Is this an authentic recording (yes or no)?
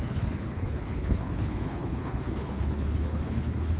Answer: no